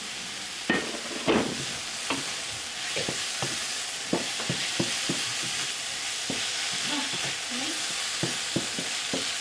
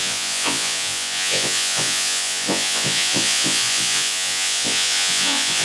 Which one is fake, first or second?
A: second